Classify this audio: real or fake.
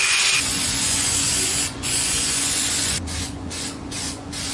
fake